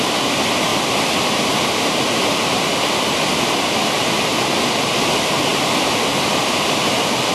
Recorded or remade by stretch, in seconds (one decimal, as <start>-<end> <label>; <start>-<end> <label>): 0.0-5.5 recorded; 5.5-7.3 remade